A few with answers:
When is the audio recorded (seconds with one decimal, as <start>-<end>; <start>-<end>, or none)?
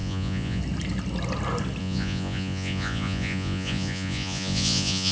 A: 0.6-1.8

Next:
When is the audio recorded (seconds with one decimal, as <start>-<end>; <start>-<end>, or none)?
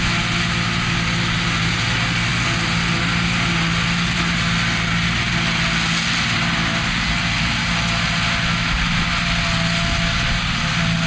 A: 0.0-11.1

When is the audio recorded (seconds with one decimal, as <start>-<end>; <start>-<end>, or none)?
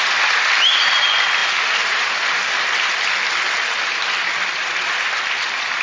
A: 0.0-5.8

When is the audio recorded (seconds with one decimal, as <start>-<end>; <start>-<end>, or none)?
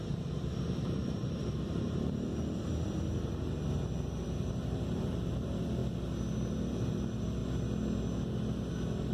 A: 5.8-6.5; 7.4-9.1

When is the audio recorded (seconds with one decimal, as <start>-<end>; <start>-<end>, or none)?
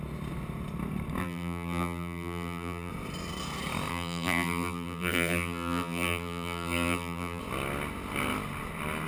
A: 0.0-1.2; 2.9-3.9; 7.4-9.1